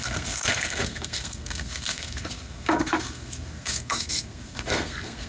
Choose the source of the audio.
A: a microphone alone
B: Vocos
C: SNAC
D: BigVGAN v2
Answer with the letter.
C